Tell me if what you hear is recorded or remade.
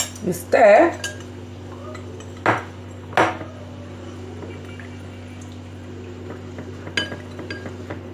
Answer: recorded